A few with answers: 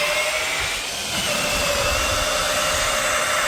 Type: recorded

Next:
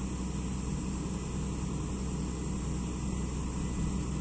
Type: recorded